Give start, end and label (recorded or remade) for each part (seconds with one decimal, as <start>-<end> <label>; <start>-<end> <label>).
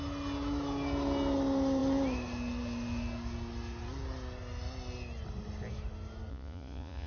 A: 0.0-6.3 recorded; 6.3-7.1 remade